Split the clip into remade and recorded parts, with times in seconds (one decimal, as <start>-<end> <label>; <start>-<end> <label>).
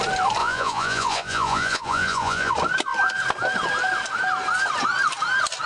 0.0-0.4 recorded; 0.4-2.5 remade; 2.5-5.7 recorded